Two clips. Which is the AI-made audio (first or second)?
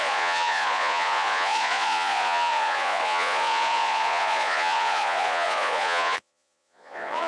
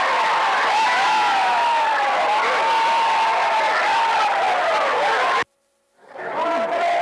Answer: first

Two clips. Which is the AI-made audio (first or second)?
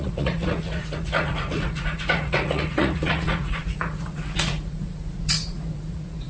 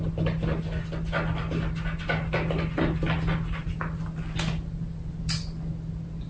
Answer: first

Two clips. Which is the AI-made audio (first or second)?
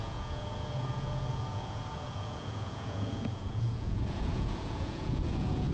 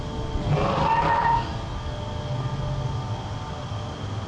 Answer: first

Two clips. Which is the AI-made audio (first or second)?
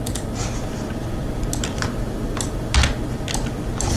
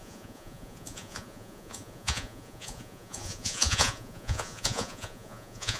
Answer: second